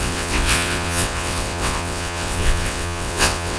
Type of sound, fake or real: fake